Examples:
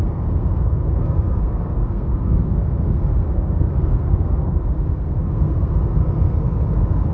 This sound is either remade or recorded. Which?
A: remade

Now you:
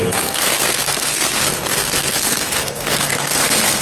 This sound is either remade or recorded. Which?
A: remade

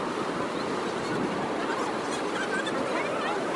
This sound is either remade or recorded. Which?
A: recorded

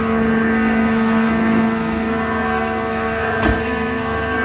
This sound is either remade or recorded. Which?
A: remade